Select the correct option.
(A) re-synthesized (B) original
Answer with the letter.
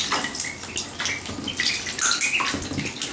B